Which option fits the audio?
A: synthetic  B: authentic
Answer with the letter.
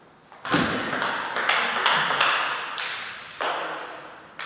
B